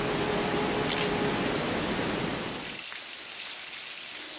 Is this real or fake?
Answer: real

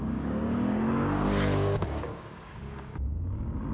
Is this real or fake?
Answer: fake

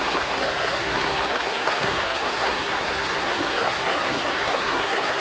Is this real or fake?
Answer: fake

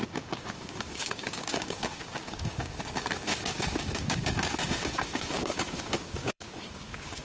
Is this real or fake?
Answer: fake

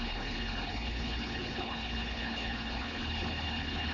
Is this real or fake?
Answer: fake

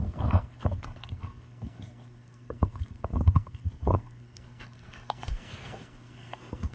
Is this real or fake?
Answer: fake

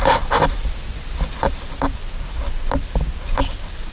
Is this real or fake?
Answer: real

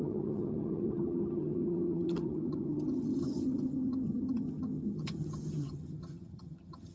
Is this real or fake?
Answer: fake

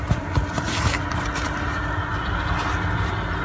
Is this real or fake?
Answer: fake